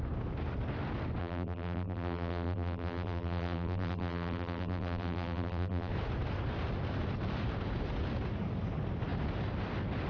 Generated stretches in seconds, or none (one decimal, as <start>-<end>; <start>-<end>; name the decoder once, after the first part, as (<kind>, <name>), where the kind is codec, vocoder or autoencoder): 1.2-5.9 (vocoder, BigVGAN v2)